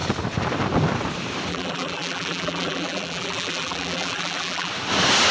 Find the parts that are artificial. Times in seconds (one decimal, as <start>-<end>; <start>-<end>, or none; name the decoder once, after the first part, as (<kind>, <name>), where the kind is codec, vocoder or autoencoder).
1.5-4.7 (vocoder, BigVGAN v2)